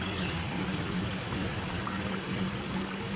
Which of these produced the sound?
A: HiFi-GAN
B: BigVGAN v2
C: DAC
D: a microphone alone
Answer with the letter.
C